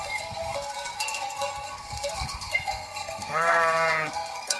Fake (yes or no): yes